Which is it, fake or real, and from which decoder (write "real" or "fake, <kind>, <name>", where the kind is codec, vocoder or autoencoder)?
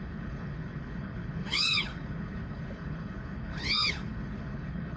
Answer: fake, codec, HILCodec